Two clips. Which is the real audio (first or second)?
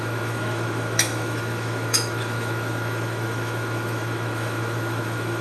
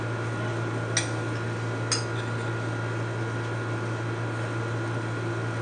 second